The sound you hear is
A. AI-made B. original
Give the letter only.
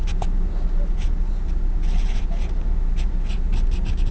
B